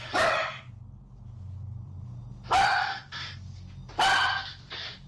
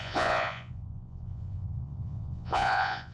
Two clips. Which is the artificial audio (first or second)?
second